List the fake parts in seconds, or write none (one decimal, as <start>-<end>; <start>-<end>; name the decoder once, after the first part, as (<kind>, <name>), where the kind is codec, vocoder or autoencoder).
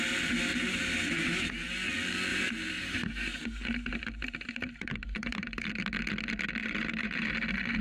0.5-1.7 (vocoder, BigVGAN v2); 2.3-5.8; 6.6-7.3